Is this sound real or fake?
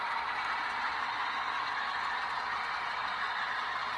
real